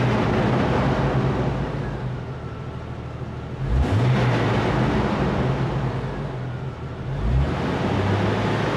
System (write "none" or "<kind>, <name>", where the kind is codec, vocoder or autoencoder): none